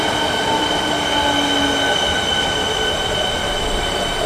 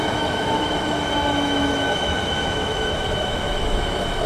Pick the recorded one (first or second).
first